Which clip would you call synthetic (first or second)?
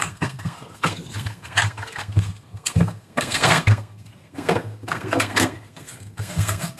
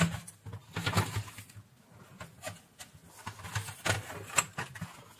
first